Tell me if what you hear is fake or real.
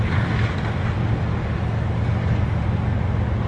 real